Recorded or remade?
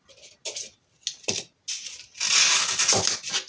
recorded